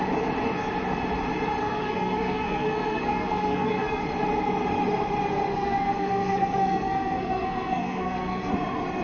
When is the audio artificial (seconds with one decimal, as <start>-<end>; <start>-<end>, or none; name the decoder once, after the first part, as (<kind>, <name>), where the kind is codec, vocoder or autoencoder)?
1.6-4.0 (codec, SNAC); 5.5-8.5